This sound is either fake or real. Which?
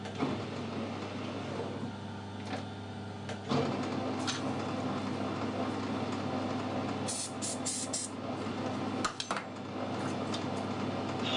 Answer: real